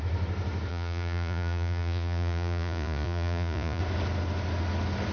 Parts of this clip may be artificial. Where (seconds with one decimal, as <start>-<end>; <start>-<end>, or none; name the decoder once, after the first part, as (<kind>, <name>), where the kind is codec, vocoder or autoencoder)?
0.7-3.8 (vocoder, Vocos)